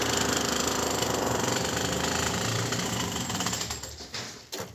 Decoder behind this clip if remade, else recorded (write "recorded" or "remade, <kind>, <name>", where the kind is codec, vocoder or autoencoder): remade, vocoder, BigVGAN v2